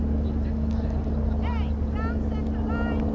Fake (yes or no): no